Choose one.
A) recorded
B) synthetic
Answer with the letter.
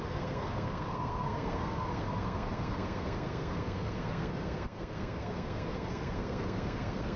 B